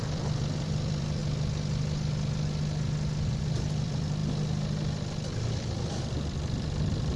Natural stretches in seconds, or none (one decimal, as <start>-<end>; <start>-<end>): 1.2-3.4; 4.2-5.9